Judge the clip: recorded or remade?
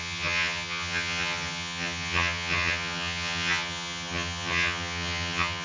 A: remade